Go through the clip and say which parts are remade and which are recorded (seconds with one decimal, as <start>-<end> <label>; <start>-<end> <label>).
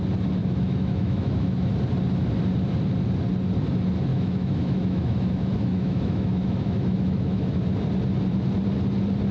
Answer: 0.0-0.4 recorded; 0.4-1.7 remade; 1.7-4.1 recorded; 4.1-7.5 remade; 7.5-9.3 recorded